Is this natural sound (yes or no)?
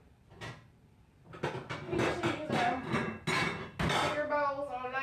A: yes